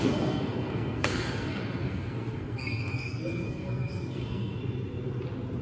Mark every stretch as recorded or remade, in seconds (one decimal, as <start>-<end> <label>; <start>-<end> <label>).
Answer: 0.0-4.6 remade; 4.6-5.6 recorded